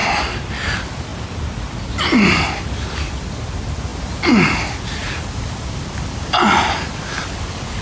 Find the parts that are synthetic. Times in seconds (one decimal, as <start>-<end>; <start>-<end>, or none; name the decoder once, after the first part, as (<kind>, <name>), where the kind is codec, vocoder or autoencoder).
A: 0.0-0.5 (vocoder, BigVGAN v2)